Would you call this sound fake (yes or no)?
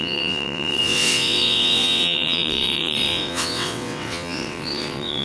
yes